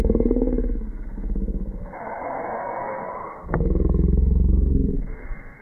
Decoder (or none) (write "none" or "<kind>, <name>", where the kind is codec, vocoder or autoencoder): codec, SNAC